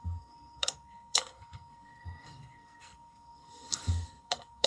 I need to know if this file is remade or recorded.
remade